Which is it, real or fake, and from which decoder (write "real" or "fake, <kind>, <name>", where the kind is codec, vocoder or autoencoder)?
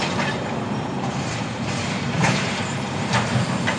fake, vocoder, BigVGAN v2